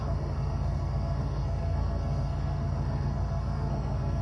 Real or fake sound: fake